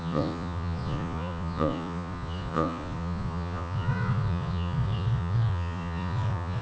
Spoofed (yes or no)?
yes